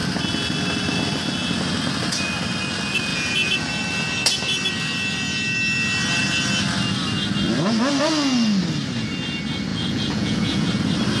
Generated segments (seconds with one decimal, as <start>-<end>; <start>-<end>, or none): 3.1-3.7; 9.7-10.7